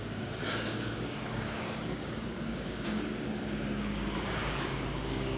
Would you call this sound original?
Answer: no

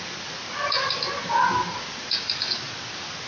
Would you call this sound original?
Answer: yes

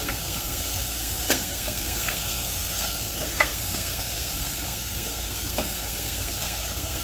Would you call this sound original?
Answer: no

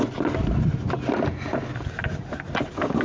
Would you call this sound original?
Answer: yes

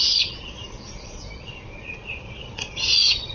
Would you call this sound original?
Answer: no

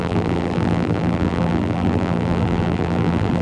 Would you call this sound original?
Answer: no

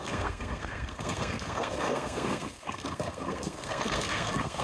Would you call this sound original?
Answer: no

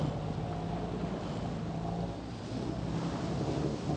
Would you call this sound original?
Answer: yes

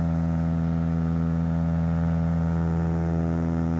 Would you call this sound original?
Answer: no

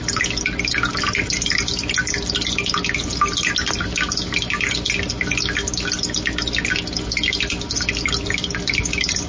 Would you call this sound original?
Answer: yes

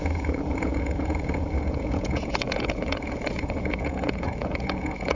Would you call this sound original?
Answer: no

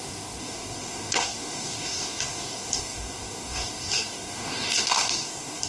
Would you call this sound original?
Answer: no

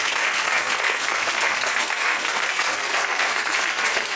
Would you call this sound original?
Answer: no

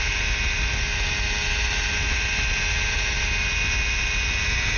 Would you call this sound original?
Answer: yes